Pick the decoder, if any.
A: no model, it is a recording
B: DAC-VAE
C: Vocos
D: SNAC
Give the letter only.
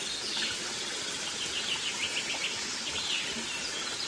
A